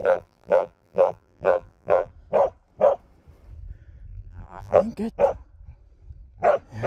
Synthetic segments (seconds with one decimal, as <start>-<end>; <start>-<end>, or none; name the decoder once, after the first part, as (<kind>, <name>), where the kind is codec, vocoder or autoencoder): 0.0-2.1 (vocoder, BigVGAN v2); 4.1-4.8